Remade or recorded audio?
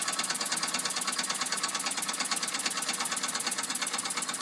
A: recorded